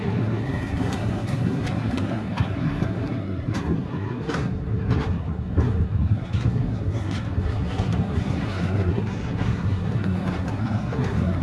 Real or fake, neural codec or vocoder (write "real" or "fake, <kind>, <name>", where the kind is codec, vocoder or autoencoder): fake, codec, SNAC